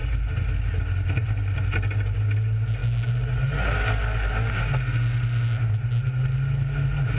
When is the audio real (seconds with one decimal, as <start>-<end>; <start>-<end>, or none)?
0.0-7.2